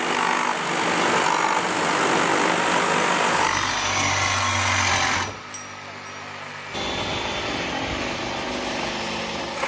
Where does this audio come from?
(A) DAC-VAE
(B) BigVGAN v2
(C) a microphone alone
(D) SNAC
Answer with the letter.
C